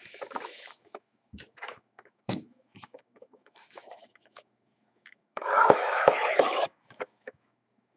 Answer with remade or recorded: remade